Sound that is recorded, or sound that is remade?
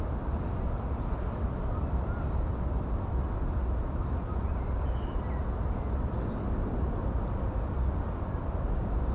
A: recorded